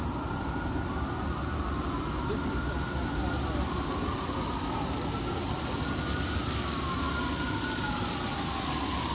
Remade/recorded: recorded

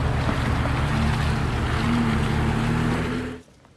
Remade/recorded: recorded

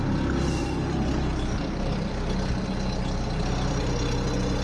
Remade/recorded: recorded